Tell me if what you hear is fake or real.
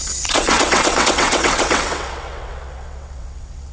fake